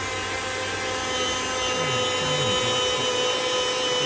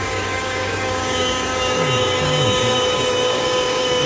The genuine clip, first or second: first